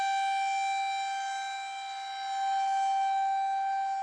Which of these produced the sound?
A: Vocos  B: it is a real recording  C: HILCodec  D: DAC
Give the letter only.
B